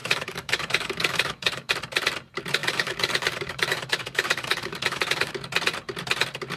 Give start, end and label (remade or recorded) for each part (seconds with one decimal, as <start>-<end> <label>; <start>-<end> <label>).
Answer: 0.0-1.7 remade; 1.7-2.6 recorded; 2.6-5.3 remade; 5.3-6.6 recorded